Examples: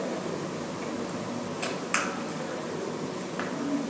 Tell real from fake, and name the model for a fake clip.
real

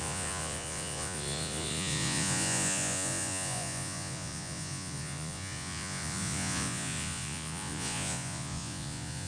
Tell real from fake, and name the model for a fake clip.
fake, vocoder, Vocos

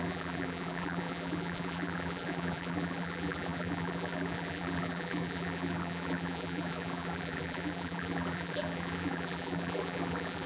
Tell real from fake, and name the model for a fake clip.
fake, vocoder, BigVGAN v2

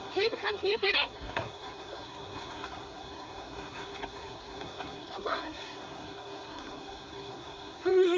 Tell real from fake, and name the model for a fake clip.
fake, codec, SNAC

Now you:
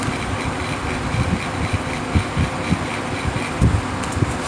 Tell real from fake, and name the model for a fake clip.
real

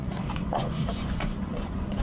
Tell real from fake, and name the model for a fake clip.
fake, vocoder, Vocos